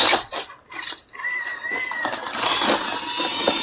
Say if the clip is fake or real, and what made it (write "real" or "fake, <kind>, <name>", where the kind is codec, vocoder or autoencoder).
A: fake, vocoder, BigVGAN v2